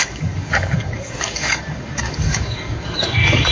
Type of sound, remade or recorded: remade